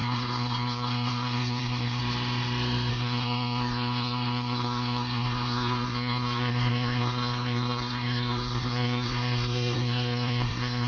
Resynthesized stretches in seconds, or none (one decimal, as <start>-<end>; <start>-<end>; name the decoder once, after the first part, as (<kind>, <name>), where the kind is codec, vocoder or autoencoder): 0.0-2.0 (codec, SNAC); 2.9-10.9